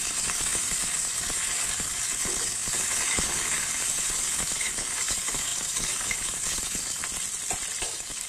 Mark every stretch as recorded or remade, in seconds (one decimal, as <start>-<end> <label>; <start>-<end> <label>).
0.0-7.0 remade; 7.0-7.8 recorded; 7.8-8.3 remade